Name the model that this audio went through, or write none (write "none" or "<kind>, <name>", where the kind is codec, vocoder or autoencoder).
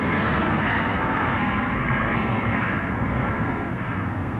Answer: codec, SNAC